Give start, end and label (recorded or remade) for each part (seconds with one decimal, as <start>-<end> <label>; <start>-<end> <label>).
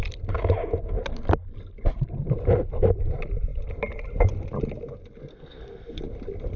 0.0-5.3 recorded; 5.3-6.0 remade; 6.0-6.6 recorded